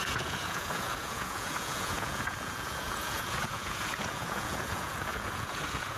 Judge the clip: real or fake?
fake